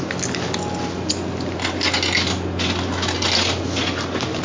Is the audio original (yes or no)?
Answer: yes